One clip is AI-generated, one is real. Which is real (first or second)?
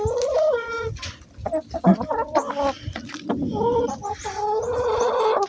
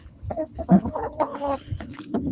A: first